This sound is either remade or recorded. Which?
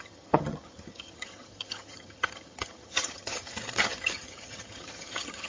remade